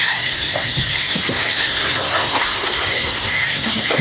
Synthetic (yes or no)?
yes